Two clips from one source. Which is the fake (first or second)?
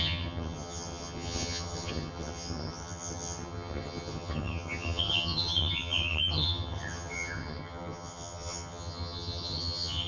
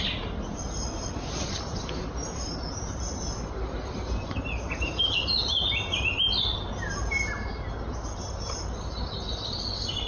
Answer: first